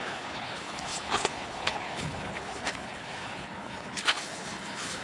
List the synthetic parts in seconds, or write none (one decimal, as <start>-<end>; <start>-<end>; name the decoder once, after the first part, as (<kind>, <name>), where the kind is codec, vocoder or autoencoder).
0.0-5.0 (codec, HILCodec)

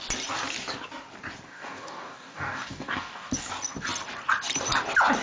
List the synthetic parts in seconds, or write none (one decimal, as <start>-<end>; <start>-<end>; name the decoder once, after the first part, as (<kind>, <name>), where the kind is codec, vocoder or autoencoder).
1.5-3.3 (codec, DAC)

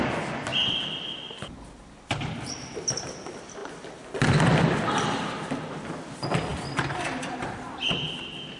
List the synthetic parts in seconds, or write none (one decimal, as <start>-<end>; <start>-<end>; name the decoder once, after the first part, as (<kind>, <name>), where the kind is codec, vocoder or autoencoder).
none

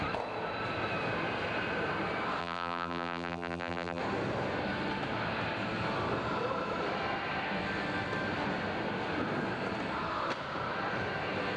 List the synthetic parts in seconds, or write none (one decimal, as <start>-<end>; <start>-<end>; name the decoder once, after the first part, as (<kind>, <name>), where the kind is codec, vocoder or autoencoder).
2.4-4.0 (vocoder, BigVGAN v2)

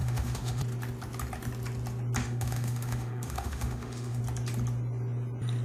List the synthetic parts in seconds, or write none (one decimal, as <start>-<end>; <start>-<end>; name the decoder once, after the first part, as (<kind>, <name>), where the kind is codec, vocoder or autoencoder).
0.0-0.6 (autoencoder, DAC-VAE); 2.2-4.2